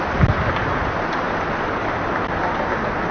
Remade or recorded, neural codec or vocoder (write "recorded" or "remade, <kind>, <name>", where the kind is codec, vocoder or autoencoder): recorded